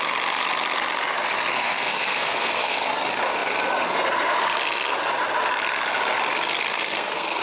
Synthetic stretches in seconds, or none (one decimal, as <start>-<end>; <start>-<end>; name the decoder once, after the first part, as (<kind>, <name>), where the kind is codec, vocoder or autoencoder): 1.5-2.9 (codec, SNAC); 6.7-7.4